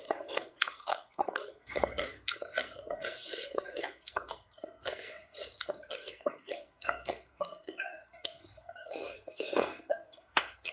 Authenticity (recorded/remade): remade